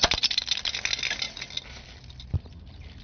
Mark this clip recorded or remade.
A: recorded